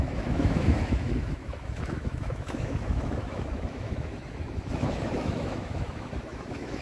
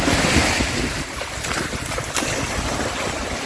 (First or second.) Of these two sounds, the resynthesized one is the first